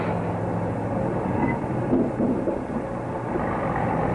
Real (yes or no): yes